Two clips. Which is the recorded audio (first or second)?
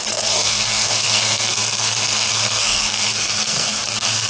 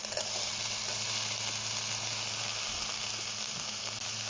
second